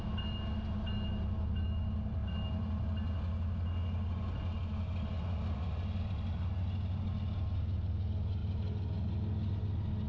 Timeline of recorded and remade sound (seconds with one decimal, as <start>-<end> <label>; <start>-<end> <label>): 0.0-10.1 recorded

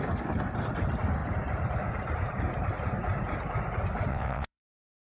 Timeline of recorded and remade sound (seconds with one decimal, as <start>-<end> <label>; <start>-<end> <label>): 0.0-4.1 recorded; 4.1-4.6 remade; 4.6-5.0 recorded

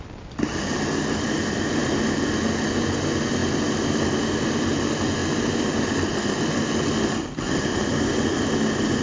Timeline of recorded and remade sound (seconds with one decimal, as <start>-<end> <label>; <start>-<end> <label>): 0.0-9.0 recorded

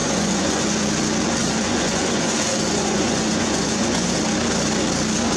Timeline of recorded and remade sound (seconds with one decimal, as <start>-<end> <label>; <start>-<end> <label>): 0.0-0.9 remade; 0.9-1.4 recorded; 1.4-4.2 remade; 4.2-5.4 recorded

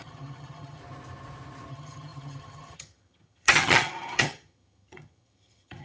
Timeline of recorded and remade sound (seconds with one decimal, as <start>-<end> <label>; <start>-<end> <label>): 0.0-0.8 remade; 0.8-1.7 recorded; 1.7-5.8 remade

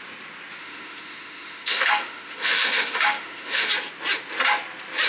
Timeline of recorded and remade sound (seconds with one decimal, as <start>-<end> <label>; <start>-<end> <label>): 0.0-0.6 recorded; 0.6-3.7 remade; 3.7-5.1 recorded

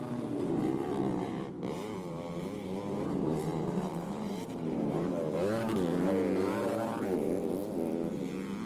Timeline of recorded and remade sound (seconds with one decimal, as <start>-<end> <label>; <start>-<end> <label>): 0.0-1.2 recorded; 1.2-5.1 remade; 5.1-8.7 recorded

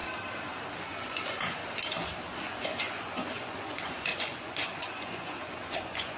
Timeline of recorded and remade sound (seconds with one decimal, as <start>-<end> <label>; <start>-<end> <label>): 0.0-0.8 recorded; 0.8-1.6 remade; 1.6-2.4 recorded; 2.4-6.2 remade